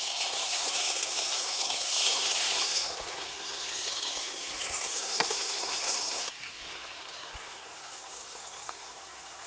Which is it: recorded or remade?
remade